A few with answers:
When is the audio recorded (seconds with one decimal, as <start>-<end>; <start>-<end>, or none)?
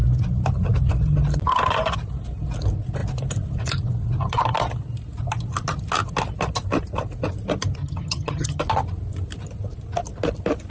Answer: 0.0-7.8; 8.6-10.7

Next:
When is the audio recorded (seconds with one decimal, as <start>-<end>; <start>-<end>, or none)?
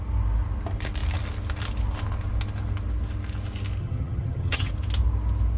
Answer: 0.0-3.8; 4.7-5.6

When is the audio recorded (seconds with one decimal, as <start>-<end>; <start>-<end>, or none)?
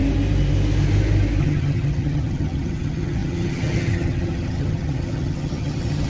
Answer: 0.0-1.4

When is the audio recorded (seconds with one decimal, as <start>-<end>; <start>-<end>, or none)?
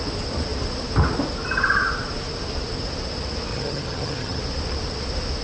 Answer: 0.0-3.5; 4.4-5.4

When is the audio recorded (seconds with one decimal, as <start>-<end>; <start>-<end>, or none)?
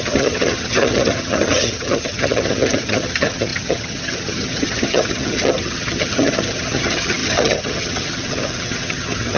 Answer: none